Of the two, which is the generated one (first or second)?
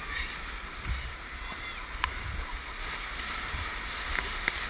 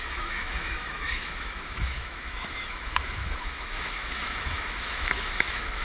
second